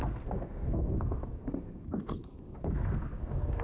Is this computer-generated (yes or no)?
yes